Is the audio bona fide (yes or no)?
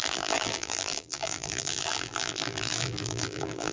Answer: no